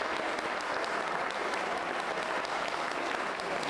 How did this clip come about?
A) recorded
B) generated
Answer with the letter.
A